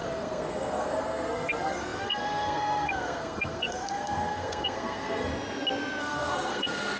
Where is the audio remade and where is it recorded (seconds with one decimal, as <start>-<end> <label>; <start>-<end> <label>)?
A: 0.0-5.3 remade; 5.3-6.0 recorded; 6.0-7.0 remade